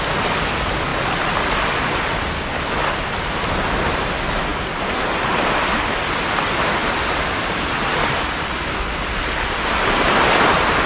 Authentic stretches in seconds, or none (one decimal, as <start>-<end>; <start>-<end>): 0.0-10.9